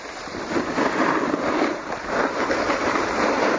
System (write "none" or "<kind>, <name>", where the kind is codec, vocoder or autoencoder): vocoder, BigVGAN v2